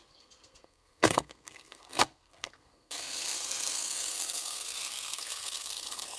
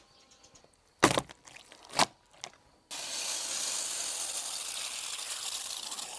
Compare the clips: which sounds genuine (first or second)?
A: second